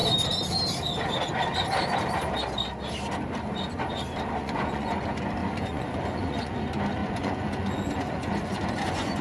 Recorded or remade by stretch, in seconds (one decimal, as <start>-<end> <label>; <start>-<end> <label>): 0.0-4.4 recorded; 4.4-5.0 remade; 5.0-5.4 recorded; 5.4-6.6 remade; 6.6-7.0 recorded; 7.0-9.2 remade